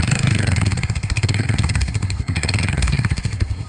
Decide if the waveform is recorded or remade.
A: remade